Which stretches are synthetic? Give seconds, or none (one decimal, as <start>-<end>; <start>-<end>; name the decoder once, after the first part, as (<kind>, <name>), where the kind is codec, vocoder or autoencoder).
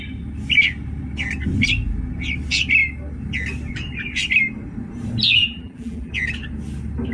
5.4-6.1 (vocoder, BigVGAN v2)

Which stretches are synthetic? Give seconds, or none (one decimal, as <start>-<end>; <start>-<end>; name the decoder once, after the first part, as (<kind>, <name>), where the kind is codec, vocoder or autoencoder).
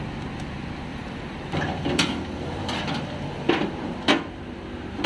0.9-3.7 (vocoder, BigVGAN v2)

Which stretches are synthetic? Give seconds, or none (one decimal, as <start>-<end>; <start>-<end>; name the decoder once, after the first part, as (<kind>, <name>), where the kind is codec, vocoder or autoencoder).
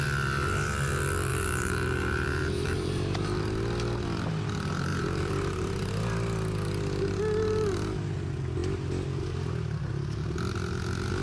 1.3-3.4 (vocoder, BigVGAN v2); 4.9-5.9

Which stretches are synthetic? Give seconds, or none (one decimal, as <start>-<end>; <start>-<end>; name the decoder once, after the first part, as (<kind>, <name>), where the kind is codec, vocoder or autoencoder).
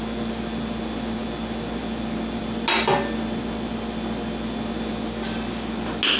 none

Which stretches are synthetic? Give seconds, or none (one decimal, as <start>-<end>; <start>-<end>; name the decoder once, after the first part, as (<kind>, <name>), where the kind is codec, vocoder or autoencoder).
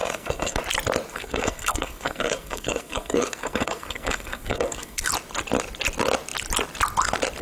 0.0-0.6 (codec, SNAC); 1.1-5.1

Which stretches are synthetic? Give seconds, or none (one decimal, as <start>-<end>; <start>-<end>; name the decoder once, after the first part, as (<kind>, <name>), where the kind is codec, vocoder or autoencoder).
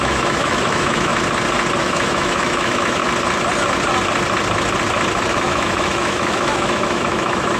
0.0-1.1 (autoencoder, DAC-VAE); 1.8-3.0; 5.3-7.6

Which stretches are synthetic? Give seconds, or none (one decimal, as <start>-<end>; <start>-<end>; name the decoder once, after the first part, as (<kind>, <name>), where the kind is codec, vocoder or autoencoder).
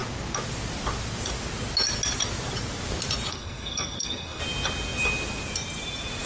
3.3-4.4 (codec, SNAC)